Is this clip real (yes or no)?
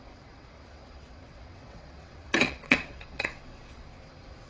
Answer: no